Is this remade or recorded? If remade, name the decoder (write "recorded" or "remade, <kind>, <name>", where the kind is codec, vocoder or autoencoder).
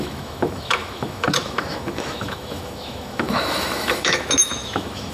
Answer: remade, autoencoder, DAC-VAE